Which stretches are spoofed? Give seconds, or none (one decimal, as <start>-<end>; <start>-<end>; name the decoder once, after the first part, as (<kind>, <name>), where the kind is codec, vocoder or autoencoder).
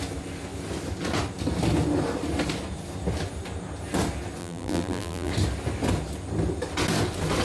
4.4-5.3 (vocoder, BigVGAN v2)